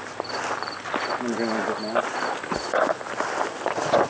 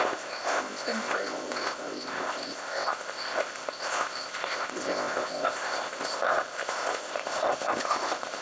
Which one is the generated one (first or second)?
second